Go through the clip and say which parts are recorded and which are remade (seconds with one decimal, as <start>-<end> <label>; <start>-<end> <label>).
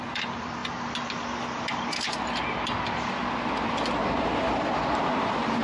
0.0-0.6 remade; 0.6-4.0 recorded; 4.0-5.6 remade